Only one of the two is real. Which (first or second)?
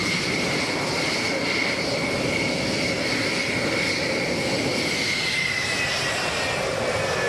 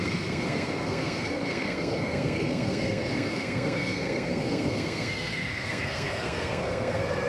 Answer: first